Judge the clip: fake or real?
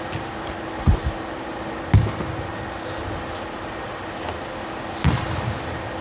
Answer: real